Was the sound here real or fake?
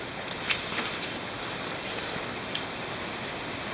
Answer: real